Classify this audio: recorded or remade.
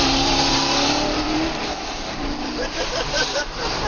remade